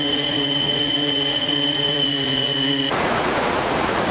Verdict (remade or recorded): remade